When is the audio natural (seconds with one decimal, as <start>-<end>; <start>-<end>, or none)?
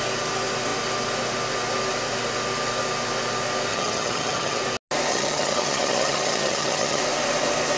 0.0-3.7; 4.6-5.1; 7.0-7.8